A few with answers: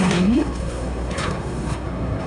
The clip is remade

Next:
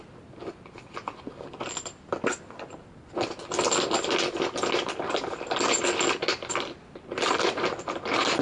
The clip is recorded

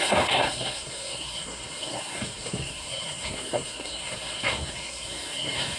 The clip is remade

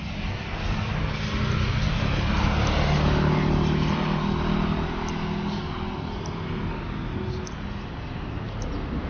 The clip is recorded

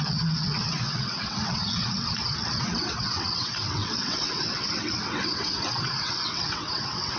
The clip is remade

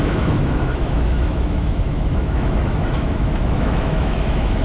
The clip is remade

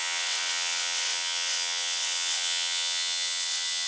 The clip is remade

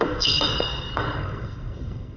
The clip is remade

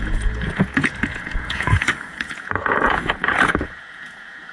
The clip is remade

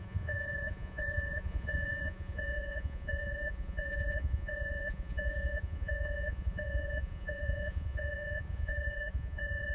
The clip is remade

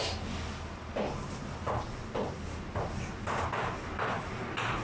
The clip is recorded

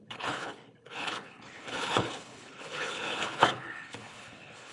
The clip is remade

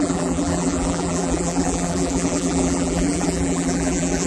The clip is remade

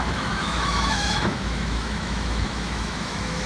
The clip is remade